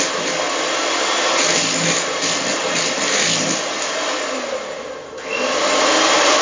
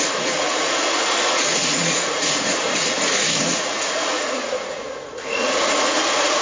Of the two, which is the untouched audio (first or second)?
first